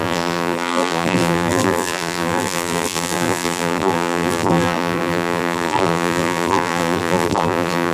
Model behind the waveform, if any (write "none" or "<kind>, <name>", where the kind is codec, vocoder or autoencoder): vocoder, BigVGAN v2